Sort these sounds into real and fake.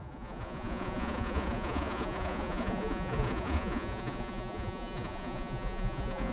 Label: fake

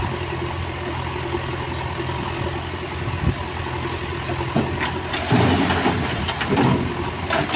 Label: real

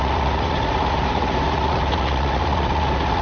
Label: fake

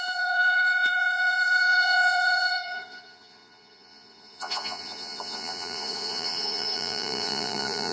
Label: fake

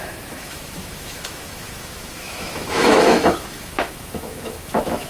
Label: fake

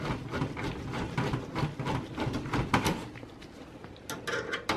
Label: real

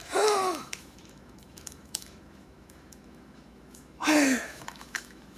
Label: fake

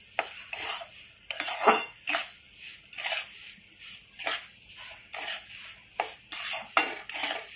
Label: real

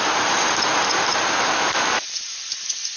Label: real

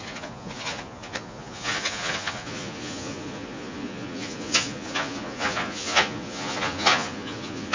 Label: fake